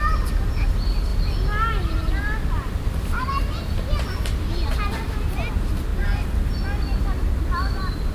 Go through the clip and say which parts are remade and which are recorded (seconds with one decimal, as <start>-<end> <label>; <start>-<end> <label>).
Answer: 0.0-5.9 recorded; 5.9-6.5 remade; 6.5-8.1 recorded